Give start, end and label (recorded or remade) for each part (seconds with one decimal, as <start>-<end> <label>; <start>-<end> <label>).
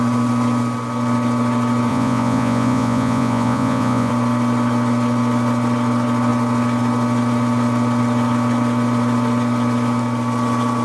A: 0.0-1.9 recorded; 1.9-4.1 remade; 4.1-10.8 recorded